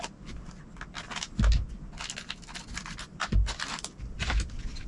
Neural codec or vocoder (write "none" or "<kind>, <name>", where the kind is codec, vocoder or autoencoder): none